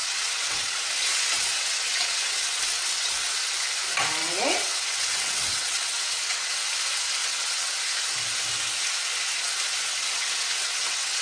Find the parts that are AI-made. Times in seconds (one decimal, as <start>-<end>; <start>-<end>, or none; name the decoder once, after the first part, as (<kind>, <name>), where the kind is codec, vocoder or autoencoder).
0.0-3.3 (vocoder, WaveNeXt); 4.2-6.5; 7.2-7.7; 9.9-11.2